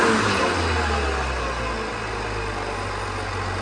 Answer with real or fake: real